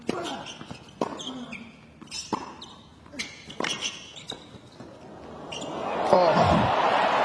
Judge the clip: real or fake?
real